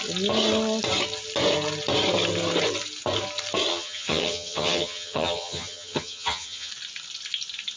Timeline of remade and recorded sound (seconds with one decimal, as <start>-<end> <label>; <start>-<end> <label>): 0.0-3.7 recorded; 3.7-6.7 remade; 6.7-7.8 recorded